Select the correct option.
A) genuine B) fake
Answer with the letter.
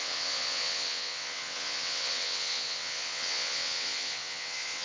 B